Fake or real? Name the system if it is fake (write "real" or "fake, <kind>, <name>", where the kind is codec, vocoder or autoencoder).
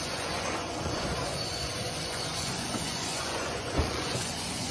fake, vocoder, Vocos